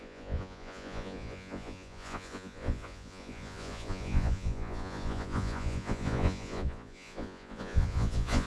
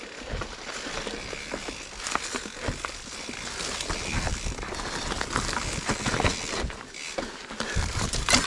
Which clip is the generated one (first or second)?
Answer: first